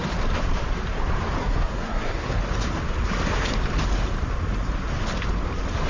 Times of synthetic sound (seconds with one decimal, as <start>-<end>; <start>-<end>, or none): 1.4-2.4